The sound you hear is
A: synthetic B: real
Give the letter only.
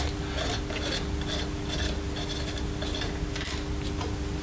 B